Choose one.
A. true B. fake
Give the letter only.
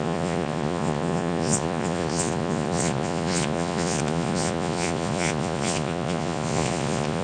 B